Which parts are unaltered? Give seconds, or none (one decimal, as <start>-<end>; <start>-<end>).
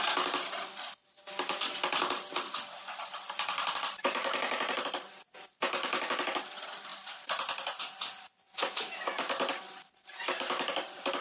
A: 0.0-11.2